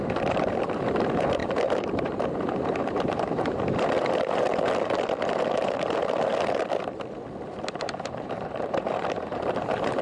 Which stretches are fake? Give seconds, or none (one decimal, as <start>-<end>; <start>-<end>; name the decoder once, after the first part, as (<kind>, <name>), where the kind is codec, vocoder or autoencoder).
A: 0.0-4.5 (vocoder, BigVGAN v2); 5.6-6.3; 7.7-10.0